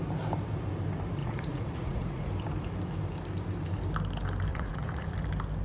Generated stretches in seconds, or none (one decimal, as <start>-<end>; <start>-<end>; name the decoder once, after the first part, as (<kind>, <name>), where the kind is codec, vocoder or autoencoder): 1.2-2.3 (vocoder, Vocos); 4.5-5.1